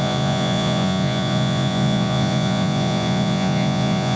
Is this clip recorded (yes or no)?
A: no